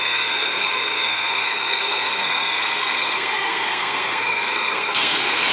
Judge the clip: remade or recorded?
remade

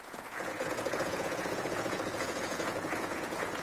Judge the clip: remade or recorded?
remade